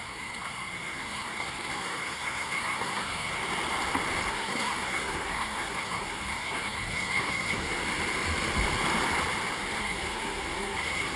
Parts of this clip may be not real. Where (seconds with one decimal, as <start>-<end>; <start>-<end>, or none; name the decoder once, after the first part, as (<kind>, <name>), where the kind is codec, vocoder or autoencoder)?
0.0-3.4 (codec, SNAC); 4.3-7.8; 9.8-11.2